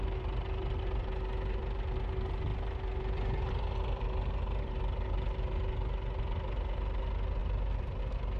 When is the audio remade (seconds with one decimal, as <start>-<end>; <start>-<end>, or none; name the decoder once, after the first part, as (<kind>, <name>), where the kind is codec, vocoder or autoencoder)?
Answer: 7.4-8.0 (vocoder, BigVGAN v2)